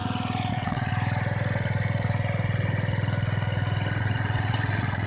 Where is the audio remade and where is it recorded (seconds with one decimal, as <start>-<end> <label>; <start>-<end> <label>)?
0.0-0.5 recorded; 0.5-0.9 remade; 0.9-4.0 recorded; 4.0-5.1 remade